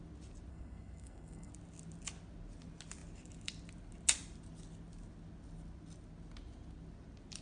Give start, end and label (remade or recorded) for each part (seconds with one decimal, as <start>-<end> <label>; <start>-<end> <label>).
0.0-0.5 recorded; 0.5-1.5 remade; 1.5-7.4 recorded